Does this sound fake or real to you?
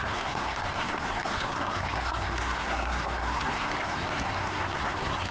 fake